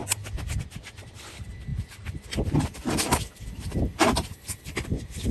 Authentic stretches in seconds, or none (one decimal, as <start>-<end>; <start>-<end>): 0.0-0.7